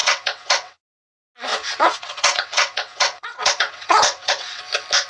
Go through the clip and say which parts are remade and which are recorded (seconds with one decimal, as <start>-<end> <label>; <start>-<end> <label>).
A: 0.0-0.8 remade; 0.8-1.5 recorded; 1.5-4.6 remade; 4.6-5.1 recorded